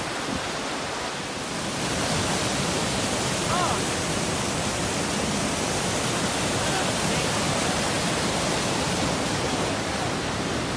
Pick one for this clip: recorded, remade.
recorded